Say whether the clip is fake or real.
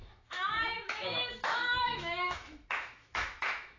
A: fake